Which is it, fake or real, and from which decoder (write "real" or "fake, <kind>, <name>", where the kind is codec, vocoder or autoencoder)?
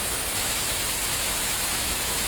fake, autoencoder, DAC-VAE